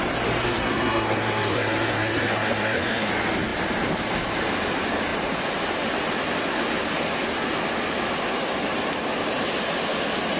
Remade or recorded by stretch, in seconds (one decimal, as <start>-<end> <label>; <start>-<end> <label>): 0.0-0.4 recorded; 0.4-3.1 remade; 3.1-10.4 recorded